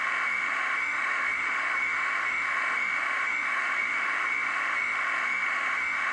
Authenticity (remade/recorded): remade